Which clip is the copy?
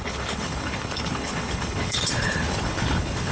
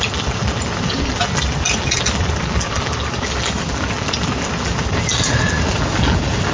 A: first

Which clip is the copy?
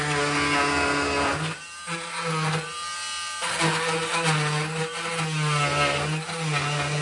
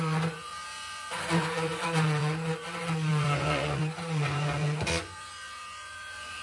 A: second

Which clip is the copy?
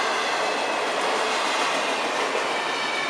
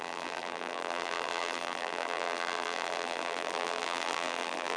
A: second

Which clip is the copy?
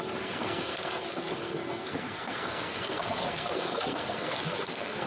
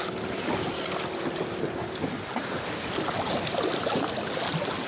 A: first